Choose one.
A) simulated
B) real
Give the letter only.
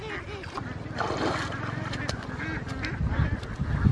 B